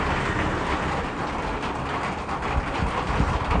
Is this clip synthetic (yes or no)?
no